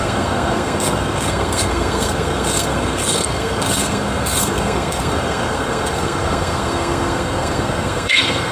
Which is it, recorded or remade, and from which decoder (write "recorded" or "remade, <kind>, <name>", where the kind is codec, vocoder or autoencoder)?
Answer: remade, codec, SNAC